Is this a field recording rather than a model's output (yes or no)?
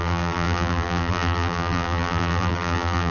no